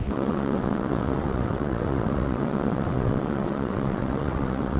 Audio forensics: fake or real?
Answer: fake